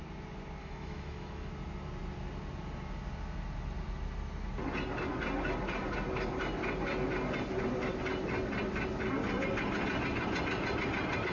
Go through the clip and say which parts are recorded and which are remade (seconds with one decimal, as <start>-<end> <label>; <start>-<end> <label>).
0.0-0.6 recorded; 0.6-1.5 remade; 1.5-11.3 recorded